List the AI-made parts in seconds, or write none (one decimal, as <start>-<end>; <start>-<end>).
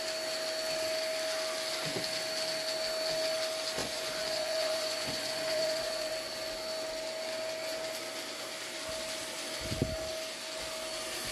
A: 3.8-6.1